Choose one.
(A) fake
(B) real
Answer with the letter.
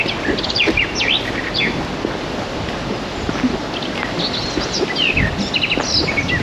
B